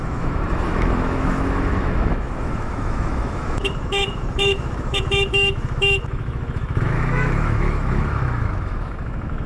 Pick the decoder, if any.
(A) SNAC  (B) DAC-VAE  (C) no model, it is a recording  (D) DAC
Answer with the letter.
B